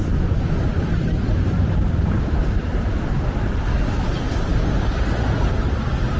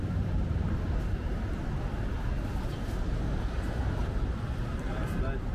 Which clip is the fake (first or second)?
first